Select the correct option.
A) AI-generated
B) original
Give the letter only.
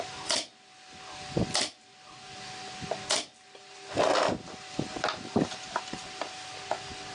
B